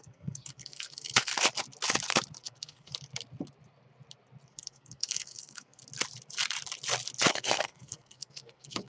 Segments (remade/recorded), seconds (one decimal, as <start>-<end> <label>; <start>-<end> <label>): 0.0-1.3 remade; 1.3-2.4 recorded; 2.4-2.9 remade; 2.9-4.5 recorded; 4.5-5.8 remade; 5.8-7.3 recorded; 7.3-8.9 remade